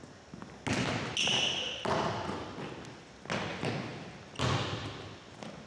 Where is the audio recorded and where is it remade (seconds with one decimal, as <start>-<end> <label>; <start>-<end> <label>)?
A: 0.0-5.7 recorded